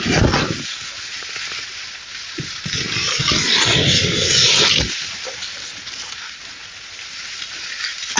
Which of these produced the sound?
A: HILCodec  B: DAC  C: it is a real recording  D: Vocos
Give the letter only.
C